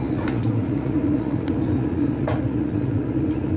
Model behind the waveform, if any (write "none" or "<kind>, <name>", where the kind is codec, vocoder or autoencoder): vocoder, Vocos